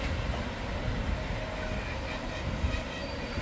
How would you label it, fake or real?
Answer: real